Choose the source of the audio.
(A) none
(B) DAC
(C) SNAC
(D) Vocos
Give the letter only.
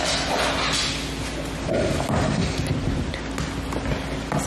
A